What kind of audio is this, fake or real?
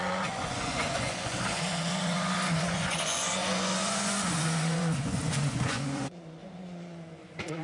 fake